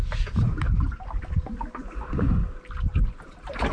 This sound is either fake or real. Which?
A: real